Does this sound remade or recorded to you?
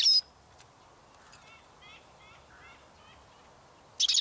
recorded